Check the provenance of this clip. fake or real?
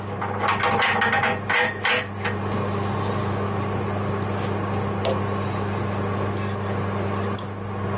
real